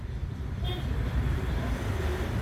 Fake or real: fake